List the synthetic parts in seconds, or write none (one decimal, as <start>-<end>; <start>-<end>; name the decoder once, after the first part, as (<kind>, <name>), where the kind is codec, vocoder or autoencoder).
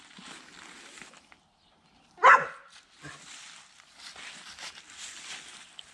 none